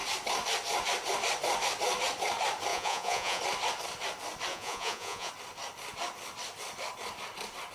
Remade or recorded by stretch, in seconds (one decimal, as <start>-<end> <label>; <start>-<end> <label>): 0.0-2.7 recorded; 2.7-3.4 remade; 3.4-4.5 recorded; 4.5-5.3 remade; 5.3-7.7 recorded